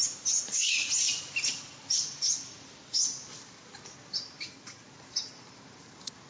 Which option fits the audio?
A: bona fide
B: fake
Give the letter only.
A